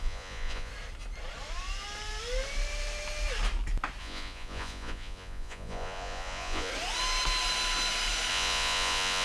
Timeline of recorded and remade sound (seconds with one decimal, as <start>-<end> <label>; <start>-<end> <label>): 0.0-0.7 remade; 0.7-4.0 recorded; 4.0-6.7 remade; 6.7-8.3 recorded; 8.3-9.2 remade